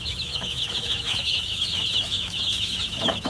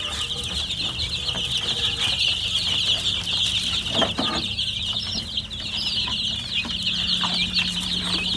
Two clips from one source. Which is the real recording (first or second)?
second